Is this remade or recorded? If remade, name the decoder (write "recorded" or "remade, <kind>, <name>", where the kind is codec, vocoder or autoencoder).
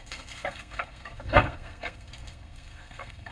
remade, codec, SNAC